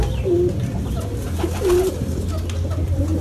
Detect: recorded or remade recorded